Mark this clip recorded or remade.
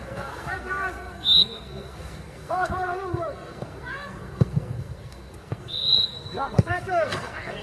remade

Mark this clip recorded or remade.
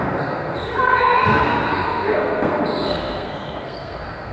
remade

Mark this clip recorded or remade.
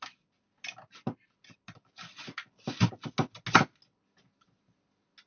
recorded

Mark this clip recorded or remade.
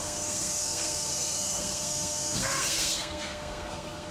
remade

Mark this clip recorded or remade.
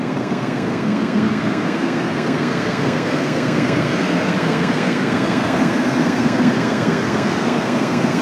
remade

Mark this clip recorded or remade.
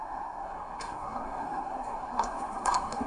remade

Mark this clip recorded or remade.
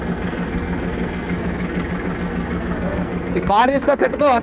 remade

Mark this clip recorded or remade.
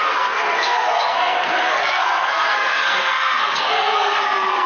remade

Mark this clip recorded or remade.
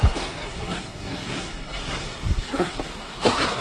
remade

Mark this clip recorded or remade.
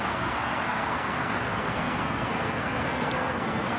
remade